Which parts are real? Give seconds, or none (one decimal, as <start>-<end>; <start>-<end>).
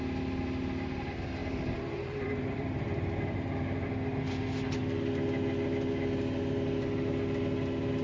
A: 0.0-1.4; 3.9-8.0